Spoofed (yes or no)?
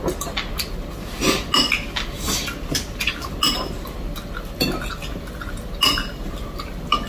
no